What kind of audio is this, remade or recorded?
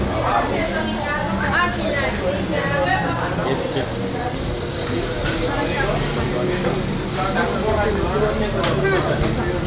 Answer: recorded